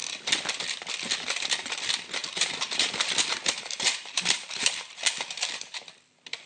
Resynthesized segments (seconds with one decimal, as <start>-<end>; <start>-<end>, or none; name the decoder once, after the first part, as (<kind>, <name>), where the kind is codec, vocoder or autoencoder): 2.2-5.8 (vocoder, BigVGAN v2)